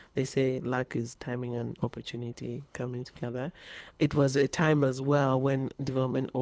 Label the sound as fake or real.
fake